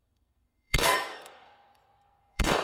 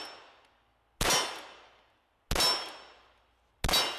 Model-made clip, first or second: first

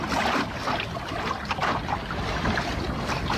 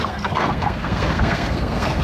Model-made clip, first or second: second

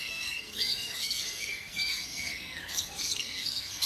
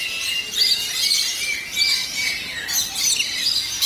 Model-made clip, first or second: first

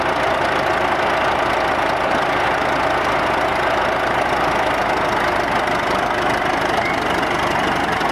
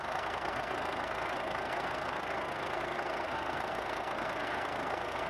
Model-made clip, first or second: second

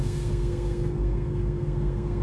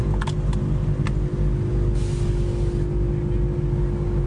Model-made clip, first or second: first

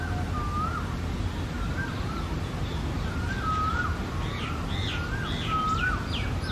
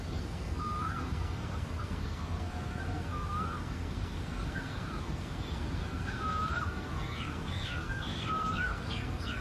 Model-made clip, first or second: second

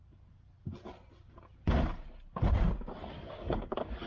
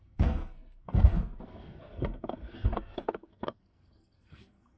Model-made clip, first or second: second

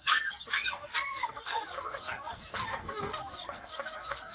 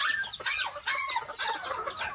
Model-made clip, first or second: first